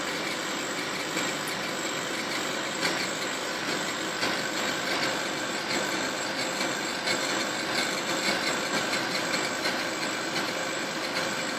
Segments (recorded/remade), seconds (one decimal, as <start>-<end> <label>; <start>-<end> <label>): 0.0-4.2 recorded; 4.2-5.5 remade; 5.5-11.6 recorded

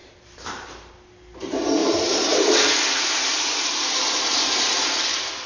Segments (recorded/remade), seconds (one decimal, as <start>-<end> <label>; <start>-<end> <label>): 0.0-0.9 remade; 0.9-1.8 recorded; 1.8-3.9 remade; 3.9-5.5 recorded

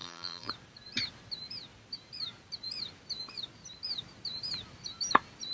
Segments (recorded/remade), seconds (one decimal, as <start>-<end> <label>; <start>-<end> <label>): 0.0-0.5 remade; 0.5-5.5 recorded